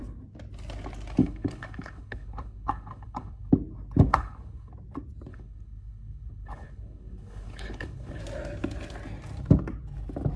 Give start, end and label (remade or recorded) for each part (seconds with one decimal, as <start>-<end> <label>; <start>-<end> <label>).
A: 0.0-1.2 recorded; 1.2-3.5 remade; 3.5-4.1 recorded; 4.1-4.7 remade; 4.7-5.3 recorded; 5.3-8.2 remade; 8.2-10.4 recorded